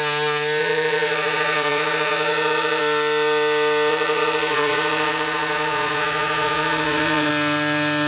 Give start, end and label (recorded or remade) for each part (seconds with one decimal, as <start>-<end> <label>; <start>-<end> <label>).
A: 0.0-0.6 recorded; 0.6-2.8 remade; 2.8-3.9 recorded; 3.9-7.3 remade; 7.3-8.1 recorded